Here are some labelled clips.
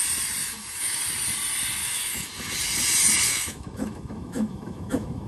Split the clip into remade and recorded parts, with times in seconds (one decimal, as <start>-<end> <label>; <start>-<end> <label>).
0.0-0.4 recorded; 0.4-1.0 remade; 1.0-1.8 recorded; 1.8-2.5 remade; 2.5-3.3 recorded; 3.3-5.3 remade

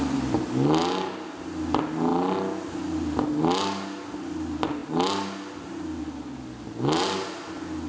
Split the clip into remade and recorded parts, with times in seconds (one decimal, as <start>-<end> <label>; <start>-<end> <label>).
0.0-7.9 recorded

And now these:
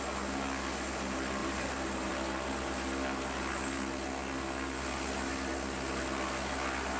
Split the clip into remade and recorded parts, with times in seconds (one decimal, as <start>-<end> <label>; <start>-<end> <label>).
0.0-1.4 recorded; 1.4-2.1 remade; 2.1-7.0 recorded